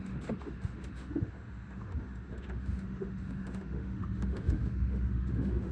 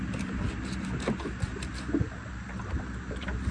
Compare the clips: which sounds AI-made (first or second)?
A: first